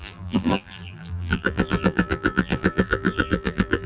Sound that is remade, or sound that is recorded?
remade